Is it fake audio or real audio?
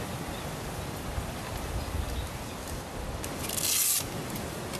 real